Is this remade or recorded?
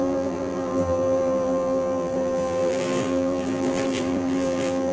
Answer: remade